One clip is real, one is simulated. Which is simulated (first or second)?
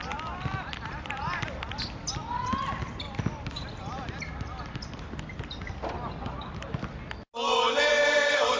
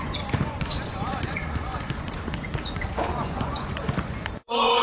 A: second